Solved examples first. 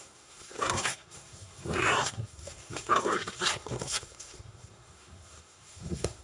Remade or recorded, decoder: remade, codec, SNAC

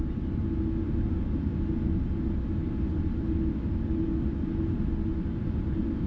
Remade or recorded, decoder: recorded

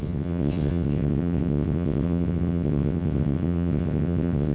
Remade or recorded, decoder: remade, vocoder, WaveNeXt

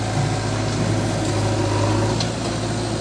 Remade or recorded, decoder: recorded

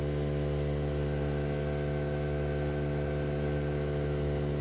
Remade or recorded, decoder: recorded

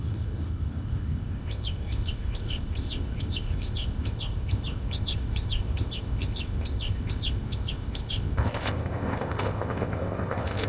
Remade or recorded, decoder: remade, codec, ZipCodec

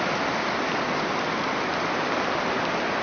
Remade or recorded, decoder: recorded